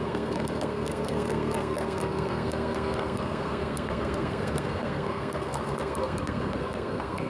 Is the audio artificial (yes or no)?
yes